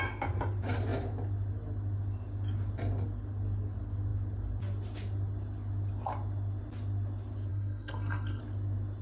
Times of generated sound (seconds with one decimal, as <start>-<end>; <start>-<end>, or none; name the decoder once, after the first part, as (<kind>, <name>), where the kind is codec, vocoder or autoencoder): 7.5-8.4 (codec, SNAC)